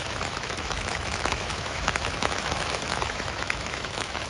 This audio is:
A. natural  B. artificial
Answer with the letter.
B